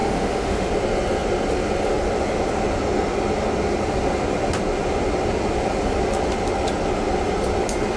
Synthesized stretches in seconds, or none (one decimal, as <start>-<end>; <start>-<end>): 0.0-0.7